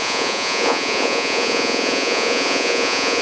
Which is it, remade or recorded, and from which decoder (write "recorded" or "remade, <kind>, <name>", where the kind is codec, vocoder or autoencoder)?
remade, vocoder, Vocos